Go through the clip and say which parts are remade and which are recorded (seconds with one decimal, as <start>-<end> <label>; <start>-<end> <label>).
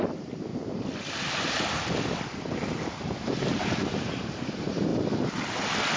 0.0-0.5 remade; 0.5-3.3 recorded; 3.3-4.9 remade; 4.9-6.0 recorded